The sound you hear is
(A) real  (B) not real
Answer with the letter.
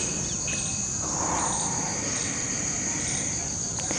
A